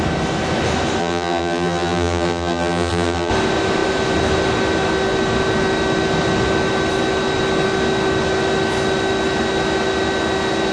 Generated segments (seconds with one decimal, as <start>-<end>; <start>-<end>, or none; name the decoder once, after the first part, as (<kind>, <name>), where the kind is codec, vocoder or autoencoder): 1.0-3.3 (vocoder, BigVGAN v2)